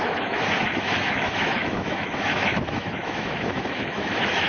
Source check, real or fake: fake